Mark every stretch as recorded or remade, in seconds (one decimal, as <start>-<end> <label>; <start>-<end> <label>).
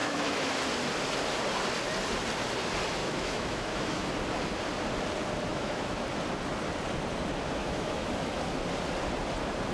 0.0-0.5 remade; 0.5-3.0 recorded; 3.0-4.1 remade; 4.1-5.5 recorded; 5.5-6.0 remade; 6.0-7.6 recorded; 7.6-8.4 remade; 8.4-9.7 recorded